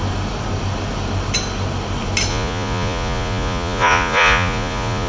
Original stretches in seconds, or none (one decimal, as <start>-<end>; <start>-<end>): 0.0-2.3

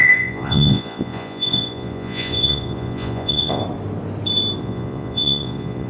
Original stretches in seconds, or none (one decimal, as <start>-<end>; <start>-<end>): 3.6-4.6

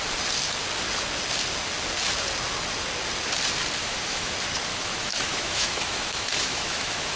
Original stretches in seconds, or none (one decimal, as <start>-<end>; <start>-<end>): 0.0-3.8; 4.3-4.7

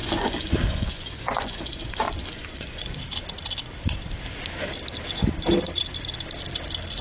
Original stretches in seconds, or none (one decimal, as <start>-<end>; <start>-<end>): 3.0-7.0

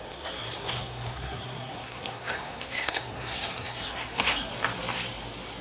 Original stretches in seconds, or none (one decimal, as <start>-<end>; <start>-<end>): 4.5-5.6

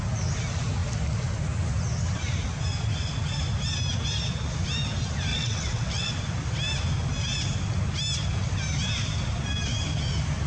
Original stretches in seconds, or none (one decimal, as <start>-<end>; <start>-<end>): 0.0-5.3; 6.1-10.5